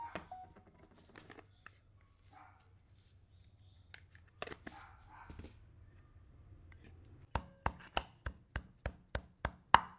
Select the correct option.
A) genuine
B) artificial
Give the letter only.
A